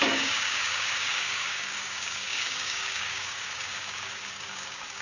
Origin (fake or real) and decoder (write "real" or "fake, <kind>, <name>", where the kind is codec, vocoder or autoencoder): fake, codec, DAC